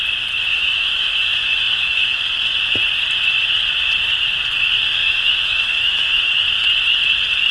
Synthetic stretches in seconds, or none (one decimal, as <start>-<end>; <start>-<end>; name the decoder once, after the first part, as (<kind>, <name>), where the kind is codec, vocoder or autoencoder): 0.5-2.2 (autoencoder, DAC-VAE); 5.0-6.3